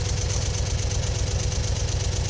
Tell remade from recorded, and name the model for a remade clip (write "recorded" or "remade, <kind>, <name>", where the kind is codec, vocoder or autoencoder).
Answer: recorded